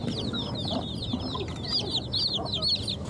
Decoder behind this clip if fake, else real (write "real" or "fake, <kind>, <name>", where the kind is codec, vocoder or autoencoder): real